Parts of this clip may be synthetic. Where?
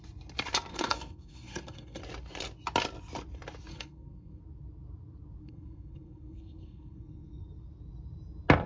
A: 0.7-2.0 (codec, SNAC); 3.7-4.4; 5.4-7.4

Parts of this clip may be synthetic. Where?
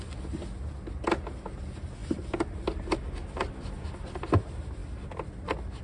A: none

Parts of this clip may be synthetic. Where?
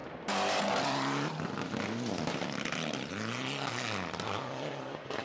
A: none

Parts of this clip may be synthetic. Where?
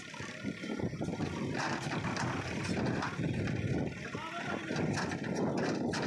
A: none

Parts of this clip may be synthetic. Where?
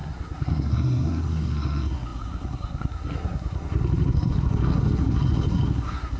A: 0.0-6.2 (codec, SNAC)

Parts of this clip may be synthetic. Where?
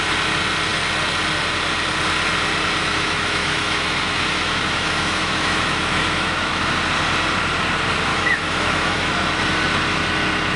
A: 2.8-6.6 (autoencoder, DAC-VAE); 8.1-9.1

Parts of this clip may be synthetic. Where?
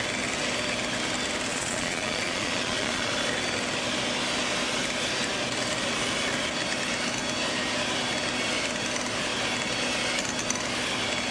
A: 1.5-3.1 (vocoder, Vocos)